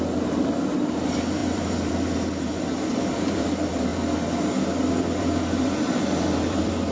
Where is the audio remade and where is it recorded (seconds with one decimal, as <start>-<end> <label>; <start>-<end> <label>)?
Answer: 0.0-3.9 remade; 3.9-4.9 recorded; 4.9-6.9 remade